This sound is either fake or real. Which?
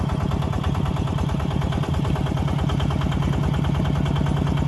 real